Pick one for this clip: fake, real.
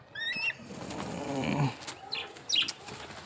real